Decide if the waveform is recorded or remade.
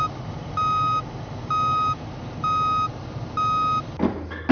recorded